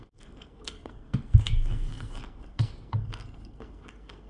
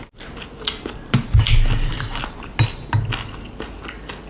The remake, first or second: first